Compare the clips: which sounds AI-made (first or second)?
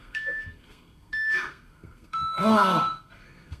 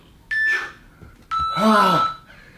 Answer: first